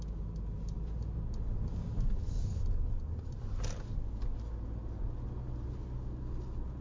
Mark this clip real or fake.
real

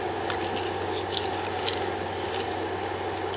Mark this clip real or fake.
real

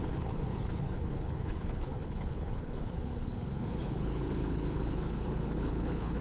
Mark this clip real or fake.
fake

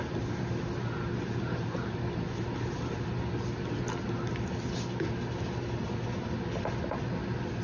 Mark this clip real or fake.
real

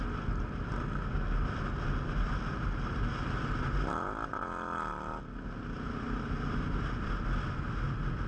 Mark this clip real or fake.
real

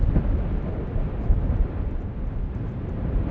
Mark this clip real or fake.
real